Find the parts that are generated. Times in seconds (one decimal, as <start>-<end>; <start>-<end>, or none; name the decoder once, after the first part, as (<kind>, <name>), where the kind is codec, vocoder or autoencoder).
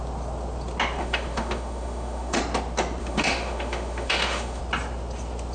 1.0-2.4 (autoencoder, DAC-VAE); 3.0-4.6